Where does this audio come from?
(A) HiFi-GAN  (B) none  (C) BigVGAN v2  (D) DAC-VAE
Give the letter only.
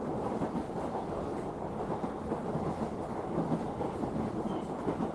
C